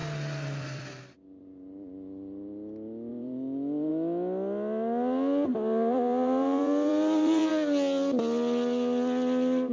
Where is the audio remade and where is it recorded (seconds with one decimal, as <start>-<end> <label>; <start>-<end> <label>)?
0.0-0.8 remade; 0.8-3.1 recorded; 3.1-3.9 remade; 3.9-5.5 recorded; 5.5-7.5 remade; 7.5-9.7 recorded